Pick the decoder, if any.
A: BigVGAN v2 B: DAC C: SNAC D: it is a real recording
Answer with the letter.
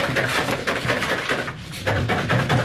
D